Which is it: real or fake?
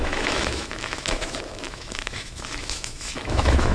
fake